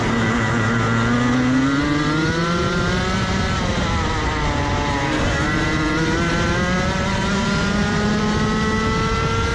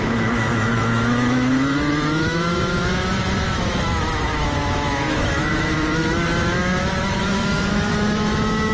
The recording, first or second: first